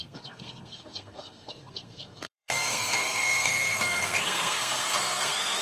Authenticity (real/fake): fake